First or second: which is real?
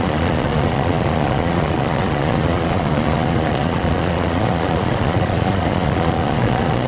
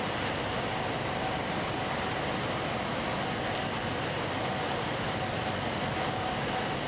second